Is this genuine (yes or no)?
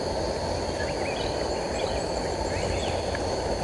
yes